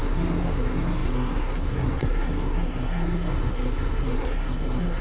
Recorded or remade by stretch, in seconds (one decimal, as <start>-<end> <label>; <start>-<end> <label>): 0.0-5.0 remade